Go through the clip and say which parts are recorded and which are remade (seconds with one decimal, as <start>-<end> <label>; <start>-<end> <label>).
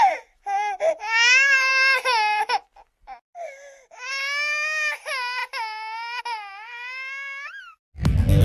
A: 0.0-8.4 recorded